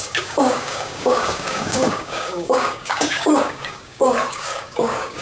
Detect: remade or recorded remade